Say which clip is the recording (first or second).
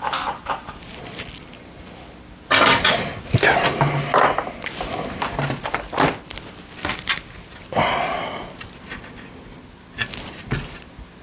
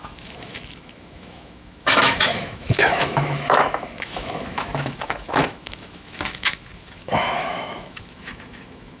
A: first